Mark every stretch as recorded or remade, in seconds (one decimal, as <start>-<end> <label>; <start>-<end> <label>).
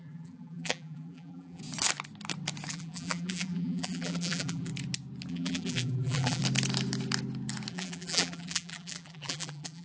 0.0-1.6 remade; 1.6-2.7 recorded; 2.7-4.7 remade; 4.7-5.3 recorded; 5.3-6.4 remade; 6.4-7.7 recorded; 7.7-9.8 remade